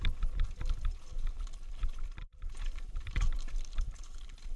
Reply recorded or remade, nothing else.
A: remade